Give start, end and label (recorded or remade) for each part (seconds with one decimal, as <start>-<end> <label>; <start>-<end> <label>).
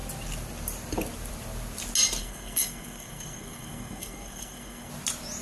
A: 0.0-2.2 recorded; 2.2-4.9 remade; 4.9-5.4 recorded